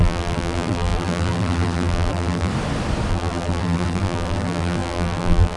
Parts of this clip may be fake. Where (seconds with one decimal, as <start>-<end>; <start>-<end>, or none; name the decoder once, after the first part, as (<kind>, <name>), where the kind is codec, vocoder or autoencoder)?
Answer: 0.0-2.5 (vocoder, BigVGAN v2); 3.1-5.6